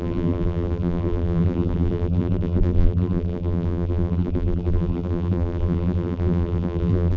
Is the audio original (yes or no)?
no